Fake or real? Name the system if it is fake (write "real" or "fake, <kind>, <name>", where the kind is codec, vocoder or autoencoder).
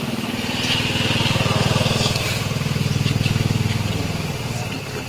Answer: real